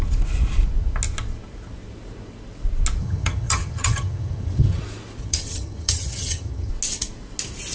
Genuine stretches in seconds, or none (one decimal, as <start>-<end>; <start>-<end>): 0.0-3.0; 4.8-5.2; 6.7-7.7